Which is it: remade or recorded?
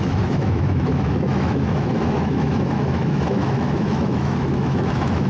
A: remade